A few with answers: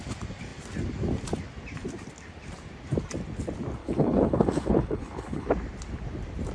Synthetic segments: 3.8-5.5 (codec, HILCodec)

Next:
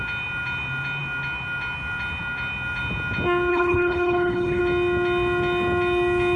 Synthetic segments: 3.5-4.6 (codec, HILCodec)

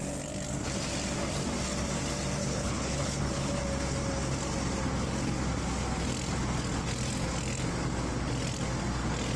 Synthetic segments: 2.4-3.6 (codec, HILCodec)

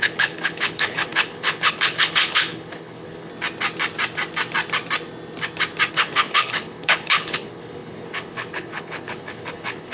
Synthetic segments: 0.0-3.3 (codec, HILCodec); 5.9-9.9

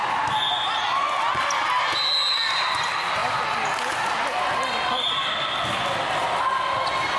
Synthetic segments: none

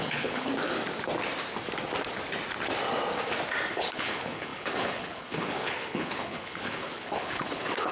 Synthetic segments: 0.0-0.5 (codec, HILCodec); 3.7-7.9